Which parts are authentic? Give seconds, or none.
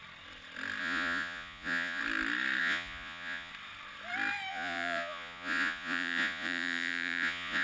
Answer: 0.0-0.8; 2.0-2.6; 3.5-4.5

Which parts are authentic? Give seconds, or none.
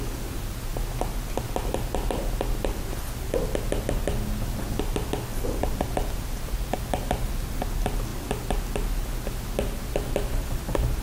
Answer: 0.0-11.0